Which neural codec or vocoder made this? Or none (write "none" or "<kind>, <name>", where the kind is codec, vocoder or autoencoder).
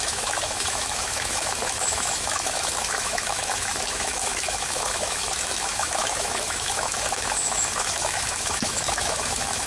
autoencoder, DAC-VAE